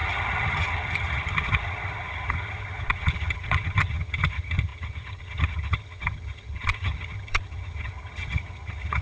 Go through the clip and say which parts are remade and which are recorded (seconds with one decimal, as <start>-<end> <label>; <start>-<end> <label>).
0.0-9.0 remade